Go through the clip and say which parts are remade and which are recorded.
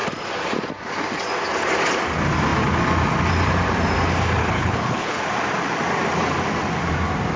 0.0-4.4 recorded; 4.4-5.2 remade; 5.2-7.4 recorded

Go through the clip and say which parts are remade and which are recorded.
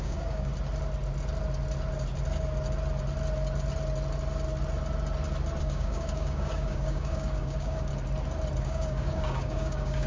0.0-0.5 remade; 0.5-5.6 recorded; 5.6-7.9 remade; 7.9-8.6 recorded; 8.6-10.1 remade